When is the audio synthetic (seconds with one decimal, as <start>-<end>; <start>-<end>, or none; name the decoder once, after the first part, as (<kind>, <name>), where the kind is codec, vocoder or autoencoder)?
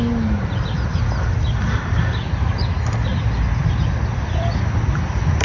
none